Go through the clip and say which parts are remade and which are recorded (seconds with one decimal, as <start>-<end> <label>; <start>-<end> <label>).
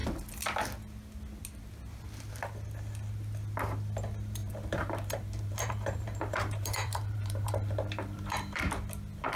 0.0-4.4 recorded; 4.4-8.6 remade; 8.6-9.4 recorded